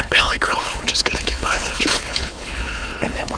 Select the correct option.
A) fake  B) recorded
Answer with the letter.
A